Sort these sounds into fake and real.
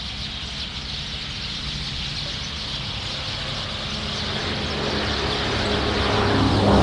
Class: real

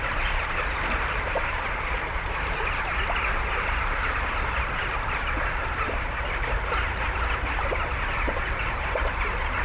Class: real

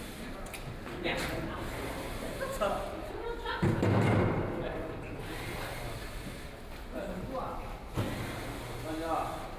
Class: real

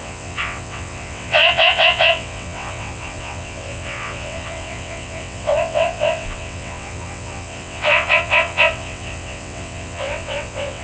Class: fake